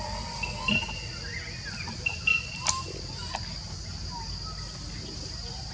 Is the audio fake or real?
real